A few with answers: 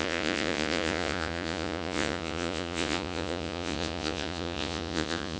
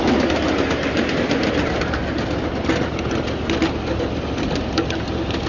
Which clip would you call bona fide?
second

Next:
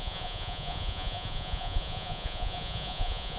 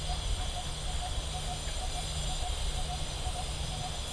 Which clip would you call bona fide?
second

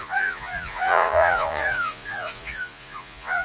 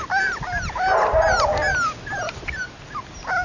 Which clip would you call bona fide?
second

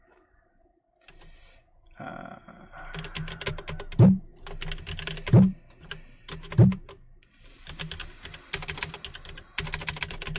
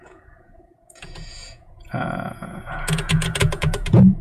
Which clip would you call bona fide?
first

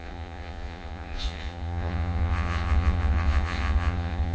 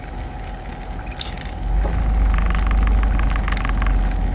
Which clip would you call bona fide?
second